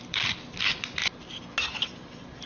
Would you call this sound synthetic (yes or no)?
no